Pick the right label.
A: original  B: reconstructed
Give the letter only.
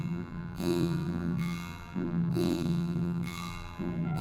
B